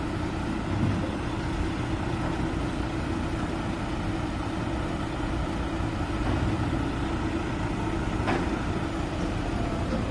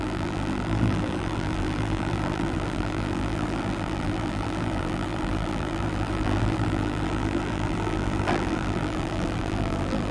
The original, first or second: first